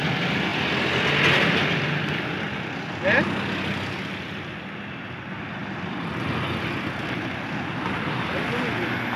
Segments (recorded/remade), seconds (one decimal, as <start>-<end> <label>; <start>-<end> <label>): 0.0-9.2 recorded